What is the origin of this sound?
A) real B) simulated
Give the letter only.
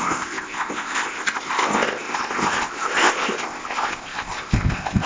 B